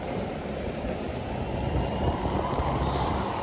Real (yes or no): yes